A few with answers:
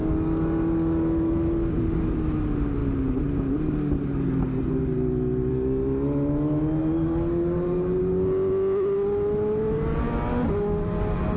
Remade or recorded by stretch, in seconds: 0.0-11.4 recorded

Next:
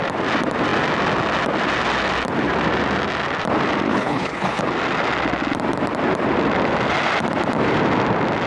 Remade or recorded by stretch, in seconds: 0.0-3.9 recorded; 3.9-4.6 remade; 4.6-8.5 recorded

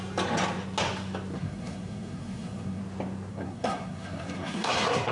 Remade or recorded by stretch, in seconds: 0.0-1.3 recorded; 1.3-2.8 remade; 2.8-3.3 recorded; 3.3-5.1 remade

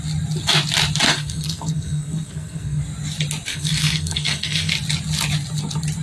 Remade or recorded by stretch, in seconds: 0.0-1.1 recorded; 1.1-2.8 remade; 2.8-3.5 recorded; 3.5-4.7 remade; 4.7-6.0 recorded

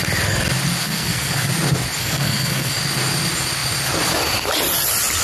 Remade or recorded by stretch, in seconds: 0.0-0.8 recorded; 0.8-1.5 remade; 1.5-2.0 recorded; 2.0-2.7 remade; 2.7-5.2 recorded

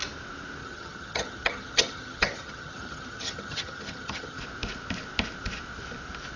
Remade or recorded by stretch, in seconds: 0.0-0.6 recorded; 0.6-4.4 remade; 4.4-6.4 recorded